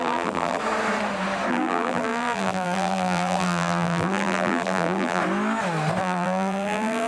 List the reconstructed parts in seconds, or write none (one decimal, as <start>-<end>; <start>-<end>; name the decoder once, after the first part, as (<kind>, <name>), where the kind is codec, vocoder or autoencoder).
0.0-0.6 (vocoder, BigVGAN v2); 1.5-5.2; 6.0-7.1